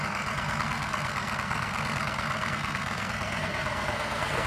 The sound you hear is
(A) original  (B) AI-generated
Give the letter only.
B